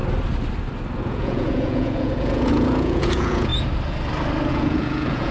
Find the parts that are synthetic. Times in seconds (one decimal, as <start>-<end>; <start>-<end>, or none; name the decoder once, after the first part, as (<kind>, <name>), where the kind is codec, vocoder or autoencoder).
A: 1.0-3.5 (vocoder, Vocos); 4.5-5.3